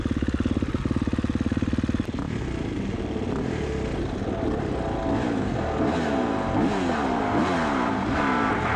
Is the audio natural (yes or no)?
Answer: yes